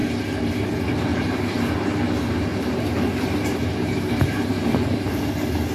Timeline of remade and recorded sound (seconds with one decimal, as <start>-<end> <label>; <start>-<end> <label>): 0.0-1.1 recorded; 1.1-1.8 remade; 1.8-2.5 recorded; 2.5-5.2 remade; 5.2-5.7 recorded